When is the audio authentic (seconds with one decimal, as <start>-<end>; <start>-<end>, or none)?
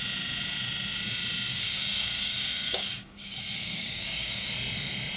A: 0.0-1.5; 4.5-5.2